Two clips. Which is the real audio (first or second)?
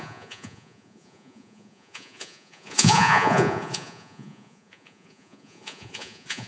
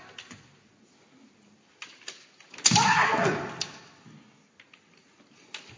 second